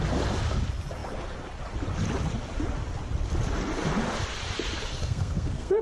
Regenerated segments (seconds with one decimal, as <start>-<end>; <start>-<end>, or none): 5.0-5.8